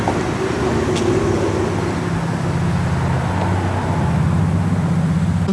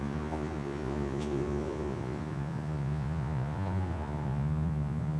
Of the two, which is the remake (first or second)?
second